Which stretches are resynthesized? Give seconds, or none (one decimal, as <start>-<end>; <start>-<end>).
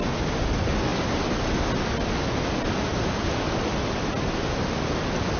none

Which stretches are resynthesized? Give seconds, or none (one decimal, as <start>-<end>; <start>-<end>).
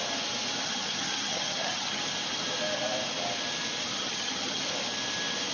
0.6-2.0; 3.9-4.6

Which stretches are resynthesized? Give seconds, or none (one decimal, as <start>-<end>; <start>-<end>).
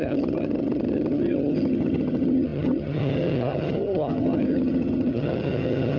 0.0-6.0